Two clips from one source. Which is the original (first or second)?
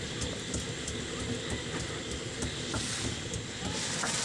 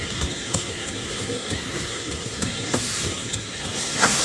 first